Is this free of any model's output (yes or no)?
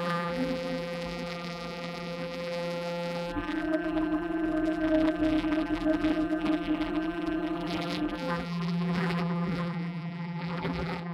no